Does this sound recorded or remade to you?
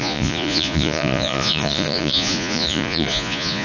remade